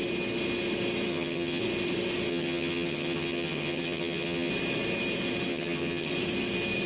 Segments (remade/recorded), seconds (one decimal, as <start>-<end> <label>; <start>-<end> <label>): 0.0-1.1 recorded; 1.1-1.6 remade; 1.6-2.3 recorded; 2.3-4.5 remade; 4.5-5.5 recorded; 5.5-6.1 remade; 6.1-6.9 recorded